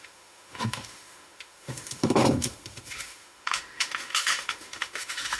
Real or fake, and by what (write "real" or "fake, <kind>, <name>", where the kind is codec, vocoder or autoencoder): fake, autoencoder, DAC-VAE